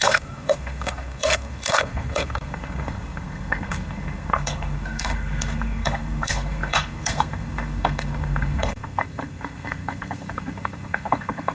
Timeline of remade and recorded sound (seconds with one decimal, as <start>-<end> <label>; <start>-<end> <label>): 0.0-11.5 remade